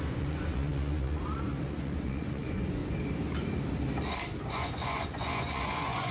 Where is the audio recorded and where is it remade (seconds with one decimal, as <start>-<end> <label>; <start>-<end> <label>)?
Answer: 0.0-2.8 remade; 2.8-4.5 recorded; 4.5-6.1 remade